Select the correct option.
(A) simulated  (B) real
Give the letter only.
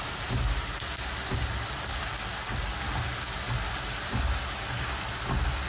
B